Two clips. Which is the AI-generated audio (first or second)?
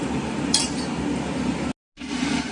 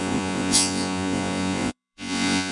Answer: second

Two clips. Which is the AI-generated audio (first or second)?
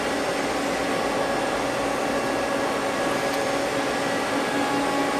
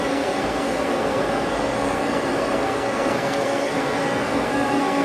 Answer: second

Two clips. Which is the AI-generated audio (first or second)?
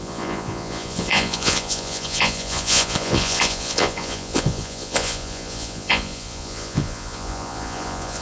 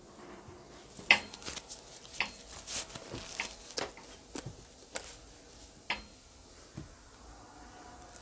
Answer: first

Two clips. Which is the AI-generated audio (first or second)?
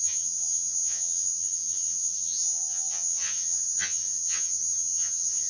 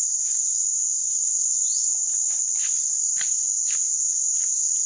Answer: first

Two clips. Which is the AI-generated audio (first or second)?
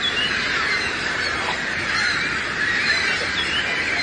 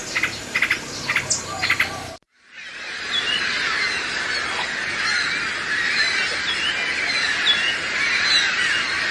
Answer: first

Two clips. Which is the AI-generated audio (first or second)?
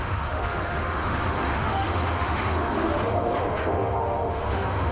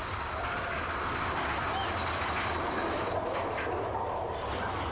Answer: first